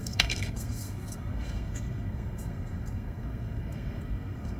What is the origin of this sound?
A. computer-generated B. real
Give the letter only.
A